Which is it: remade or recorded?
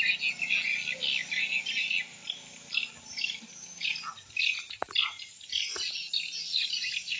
recorded